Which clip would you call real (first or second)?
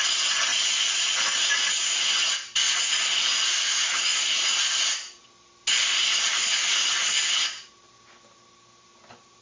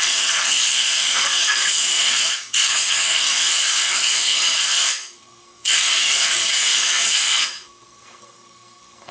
first